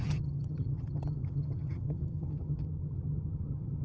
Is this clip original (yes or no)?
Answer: no